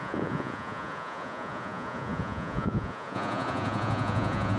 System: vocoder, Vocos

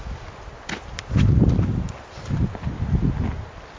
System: none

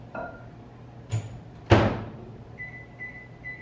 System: none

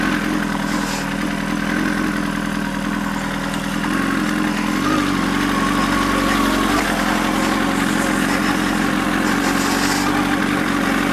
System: none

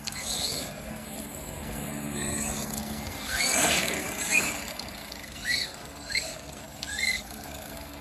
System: codec, SNAC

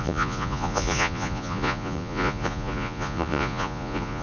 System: vocoder, Vocos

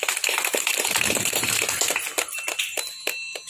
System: none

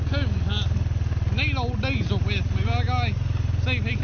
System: none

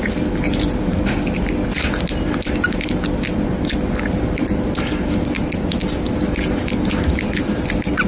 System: none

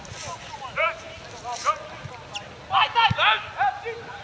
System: none